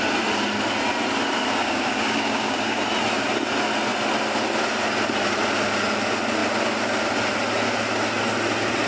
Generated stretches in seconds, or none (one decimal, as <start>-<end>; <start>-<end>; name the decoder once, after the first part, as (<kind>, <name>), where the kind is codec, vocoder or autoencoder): 1.6-2.8 (codec, DAC)